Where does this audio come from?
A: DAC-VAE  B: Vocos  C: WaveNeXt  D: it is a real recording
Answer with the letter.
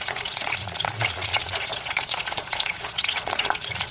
B